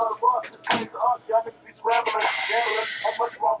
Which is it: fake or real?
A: real